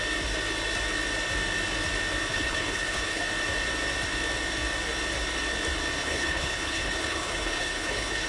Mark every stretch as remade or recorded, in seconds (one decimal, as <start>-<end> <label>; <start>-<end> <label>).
0.0-2.3 recorded; 2.3-3.2 remade; 3.2-6.0 recorded; 6.0-8.3 remade